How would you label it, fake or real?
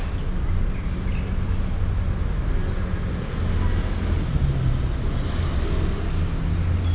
real